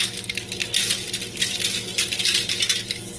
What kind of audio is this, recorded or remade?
recorded